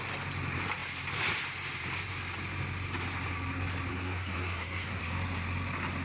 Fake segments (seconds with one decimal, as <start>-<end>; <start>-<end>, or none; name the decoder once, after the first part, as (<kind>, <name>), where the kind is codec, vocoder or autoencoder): 3.9-5.0 (codec, SNAC)